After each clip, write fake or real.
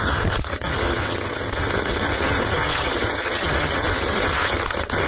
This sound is fake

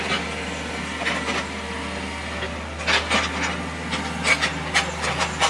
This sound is real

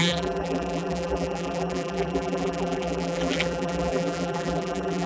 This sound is fake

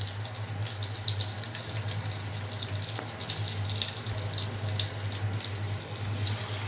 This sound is real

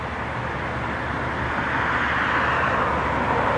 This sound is fake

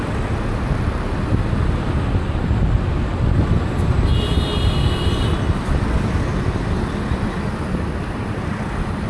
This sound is real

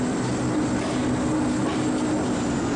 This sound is real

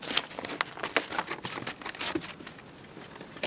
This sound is real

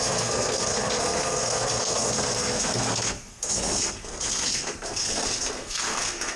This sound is fake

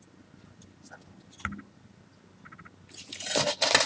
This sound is real